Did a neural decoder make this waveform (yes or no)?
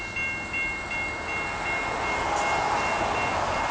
no